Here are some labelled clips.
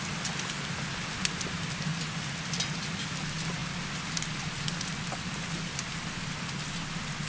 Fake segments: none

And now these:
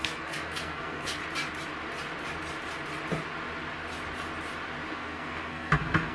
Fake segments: 0.0-1.2; 4.9-6.1

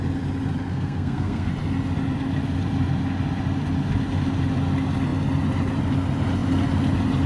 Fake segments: 0.7-1.5

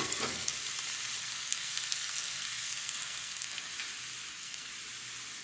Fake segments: 0.0-0.5; 1.2-3.7; 4.3-4.7

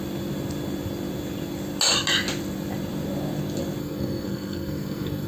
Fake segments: 3.8-5.3